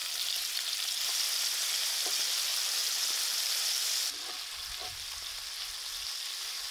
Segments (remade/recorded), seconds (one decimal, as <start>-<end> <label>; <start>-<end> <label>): 0.0-1.9 remade; 1.9-6.7 recorded